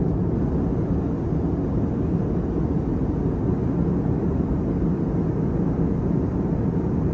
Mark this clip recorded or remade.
recorded